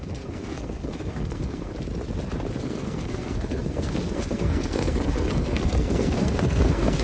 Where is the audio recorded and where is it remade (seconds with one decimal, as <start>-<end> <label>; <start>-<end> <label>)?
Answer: 0.0-1.7 remade; 1.7-2.6 recorded; 2.6-7.0 remade